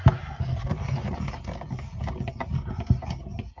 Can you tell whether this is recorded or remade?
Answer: recorded